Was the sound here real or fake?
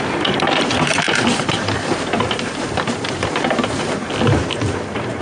fake